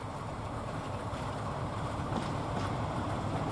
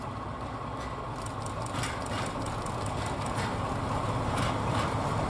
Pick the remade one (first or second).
first